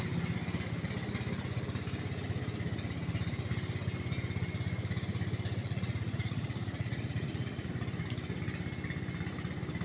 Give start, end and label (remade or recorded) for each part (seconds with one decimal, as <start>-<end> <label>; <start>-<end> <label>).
0.0-5.6 recorded; 5.6-7.7 remade; 7.7-9.8 recorded